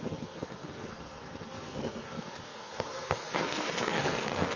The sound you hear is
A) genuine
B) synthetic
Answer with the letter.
B